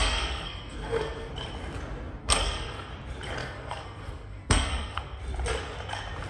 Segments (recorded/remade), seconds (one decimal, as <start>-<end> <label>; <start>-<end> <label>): 0.0-1.3 remade; 1.3-2.2 recorded; 2.2-2.9 remade; 2.9-3.4 recorded; 3.4-5.2 remade; 5.2-6.3 recorded